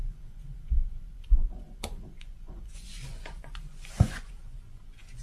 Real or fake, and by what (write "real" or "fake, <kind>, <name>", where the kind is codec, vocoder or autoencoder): fake, vocoder, Vocos